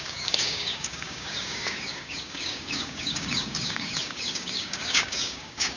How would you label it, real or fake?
fake